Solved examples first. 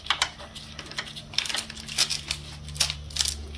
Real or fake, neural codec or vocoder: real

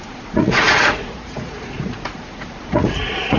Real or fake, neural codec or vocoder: fake, vocoder, Vocos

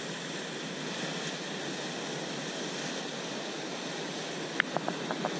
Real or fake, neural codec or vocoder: real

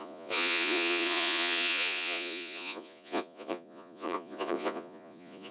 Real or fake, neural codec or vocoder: fake, vocoder, Vocos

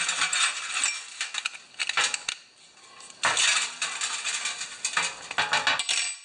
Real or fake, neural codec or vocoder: real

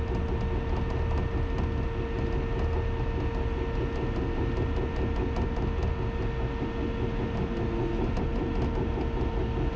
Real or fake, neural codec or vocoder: real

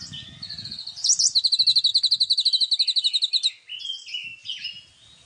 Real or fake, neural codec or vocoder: real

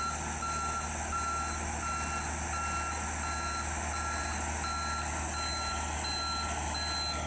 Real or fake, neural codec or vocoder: real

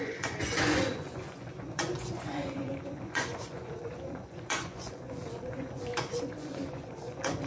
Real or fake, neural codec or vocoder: fake, vocoder, Vocos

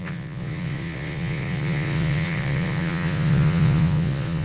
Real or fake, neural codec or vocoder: fake, vocoder, Vocos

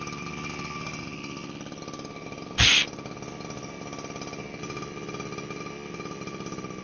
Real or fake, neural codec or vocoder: real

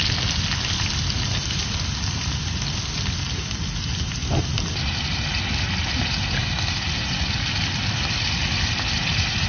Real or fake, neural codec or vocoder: real